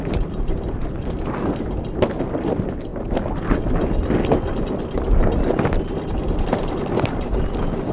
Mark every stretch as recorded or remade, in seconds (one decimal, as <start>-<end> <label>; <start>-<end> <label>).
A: 0.0-7.9 recorded

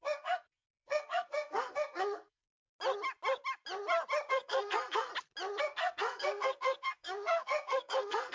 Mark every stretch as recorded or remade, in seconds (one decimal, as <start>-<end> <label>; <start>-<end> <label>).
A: 0.0-2.7 remade; 2.7-4.3 recorded; 4.3-5.1 remade; 5.1-5.6 recorded; 5.6-8.3 remade

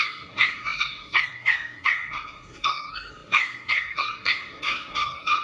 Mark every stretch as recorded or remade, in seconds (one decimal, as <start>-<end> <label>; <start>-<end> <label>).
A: 0.0-5.4 remade

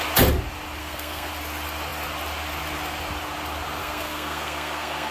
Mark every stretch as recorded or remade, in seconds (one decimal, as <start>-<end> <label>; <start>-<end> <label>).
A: 0.0-0.8 recorded; 0.8-1.3 remade; 1.3-3.8 recorded; 3.8-5.1 remade

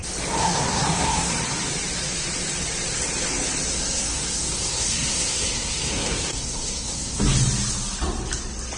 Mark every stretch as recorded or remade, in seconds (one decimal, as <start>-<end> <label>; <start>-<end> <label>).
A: 0.0-0.4 recorded; 0.4-1.3 remade; 1.3-3.7 recorded; 3.7-7.2 remade; 7.2-8.8 recorded

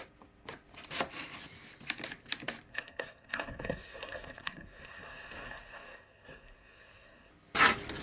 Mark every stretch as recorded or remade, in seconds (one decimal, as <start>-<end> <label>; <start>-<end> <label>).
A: 0.0-2.7 recorded; 2.7-7.3 remade; 7.3-8.0 recorded

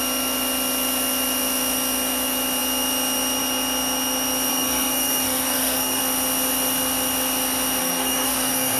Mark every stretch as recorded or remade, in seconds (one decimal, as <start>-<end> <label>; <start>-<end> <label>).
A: 0.0-4.5 recorded; 4.5-6.0 remade; 6.0-7.8 recorded; 7.8-8.8 remade

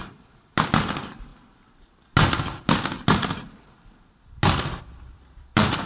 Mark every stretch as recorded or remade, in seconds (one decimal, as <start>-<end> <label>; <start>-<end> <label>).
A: 0.0-5.9 recorded